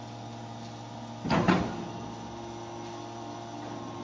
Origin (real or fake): real